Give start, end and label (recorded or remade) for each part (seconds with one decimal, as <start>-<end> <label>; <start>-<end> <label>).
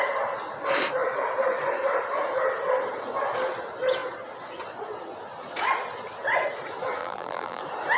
0.0-7.0 recorded; 7.0-7.6 remade; 7.6-8.0 recorded